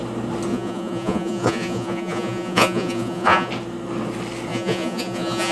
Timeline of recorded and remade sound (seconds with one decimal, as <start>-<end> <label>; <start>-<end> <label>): 0.0-0.5 recorded; 0.5-3.5 remade; 3.5-4.5 recorded; 4.5-5.5 remade